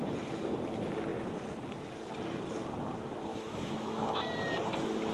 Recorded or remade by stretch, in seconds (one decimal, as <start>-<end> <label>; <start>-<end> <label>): 0.0-3.3 recorded; 3.3-4.2 remade; 4.2-5.1 recorded

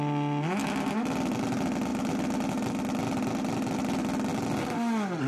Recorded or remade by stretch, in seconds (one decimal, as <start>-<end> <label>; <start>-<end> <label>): 0.0-5.3 recorded

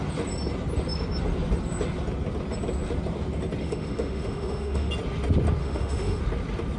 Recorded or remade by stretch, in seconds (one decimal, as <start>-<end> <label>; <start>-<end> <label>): 0.0-3.6 recorded; 3.6-4.9 remade; 4.9-5.6 recorded; 5.6-6.2 remade; 6.2-6.8 recorded

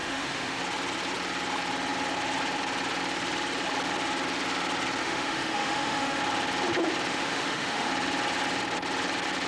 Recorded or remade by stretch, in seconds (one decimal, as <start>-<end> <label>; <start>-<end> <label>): 0.0-0.6 remade; 0.6-5.0 recorded; 5.0-6.2 remade; 6.2-7.1 recorded; 7.1-7.9 remade; 7.9-9.5 recorded

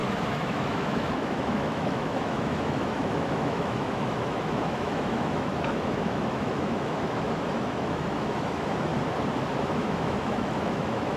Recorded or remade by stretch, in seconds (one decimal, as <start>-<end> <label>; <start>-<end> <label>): 0.0-8.9 remade; 8.9-9.7 recorded; 9.7-11.2 remade

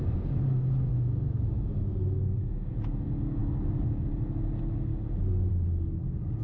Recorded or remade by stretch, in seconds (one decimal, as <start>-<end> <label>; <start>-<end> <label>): 0.0-0.9 recorded; 0.9-2.7 remade; 2.7-6.4 recorded

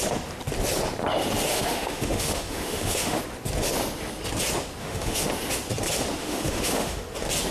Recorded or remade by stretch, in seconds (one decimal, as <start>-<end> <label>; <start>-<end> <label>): 0.0-1.5 recorded; 1.5-3.2 remade; 3.2-4.8 recorded; 4.8-5.3 remade; 5.3-6.2 recorded; 6.2-7.0 remade; 7.0-7.5 recorded